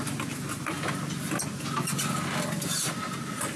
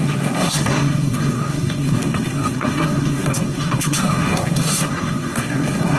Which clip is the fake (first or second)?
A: second